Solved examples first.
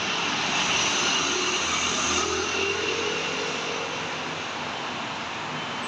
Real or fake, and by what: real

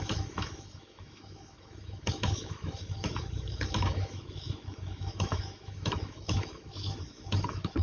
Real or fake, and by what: fake, autoencoder, DAC-VAE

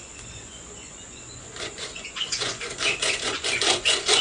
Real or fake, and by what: fake, vocoder, Vocos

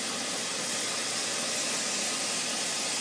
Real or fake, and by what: real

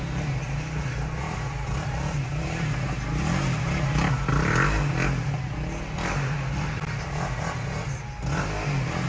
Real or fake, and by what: real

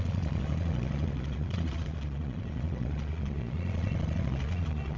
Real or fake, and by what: fake, vocoder, Vocos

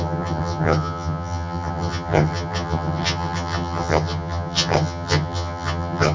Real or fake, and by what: fake, vocoder, HiFi-GAN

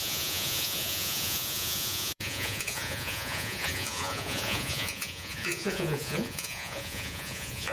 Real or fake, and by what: fake, vocoder, Vocos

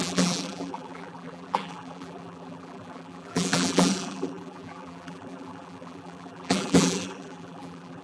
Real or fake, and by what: fake, vocoder, BigVGAN v2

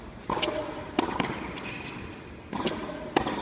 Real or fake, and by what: real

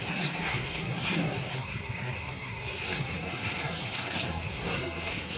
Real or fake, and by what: fake, codec, SNAC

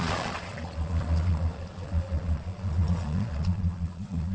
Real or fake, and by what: fake, vocoder, Vocos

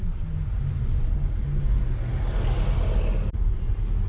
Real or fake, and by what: real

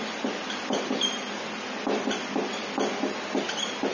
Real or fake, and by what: real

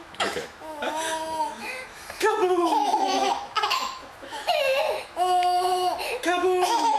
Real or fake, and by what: fake, autoencoder, DAC-VAE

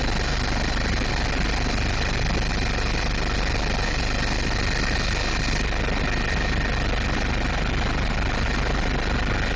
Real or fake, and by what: real